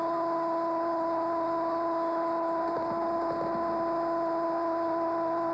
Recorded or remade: recorded